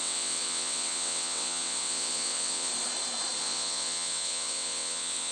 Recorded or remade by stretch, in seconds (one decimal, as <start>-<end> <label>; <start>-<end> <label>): 0.0-2.7 remade; 2.7-3.4 recorded; 3.4-5.3 remade